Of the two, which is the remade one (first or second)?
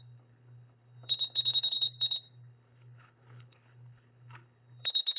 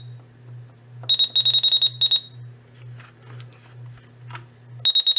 first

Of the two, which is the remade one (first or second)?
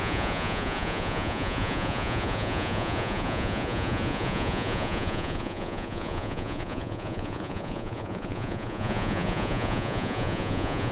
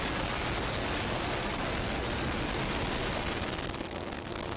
first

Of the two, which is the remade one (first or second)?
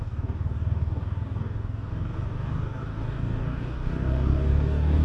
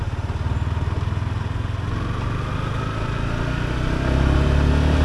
first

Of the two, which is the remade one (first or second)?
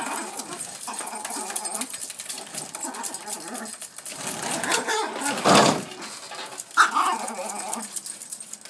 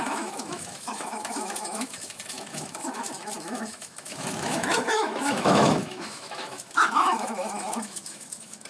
second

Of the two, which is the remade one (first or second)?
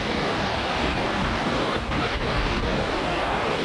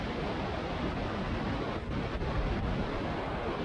first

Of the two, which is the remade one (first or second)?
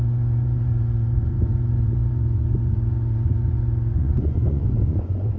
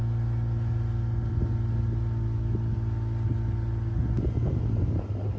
first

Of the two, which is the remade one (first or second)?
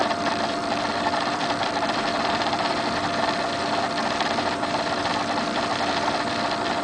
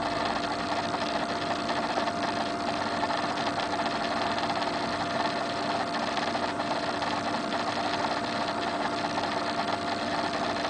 first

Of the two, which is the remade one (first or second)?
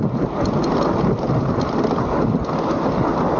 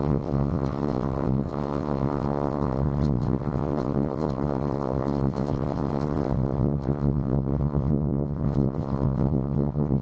second